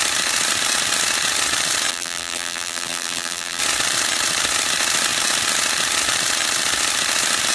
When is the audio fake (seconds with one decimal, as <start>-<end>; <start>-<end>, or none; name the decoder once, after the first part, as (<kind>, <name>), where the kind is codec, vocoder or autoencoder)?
1.9-3.6 (vocoder, BigVGAN v2)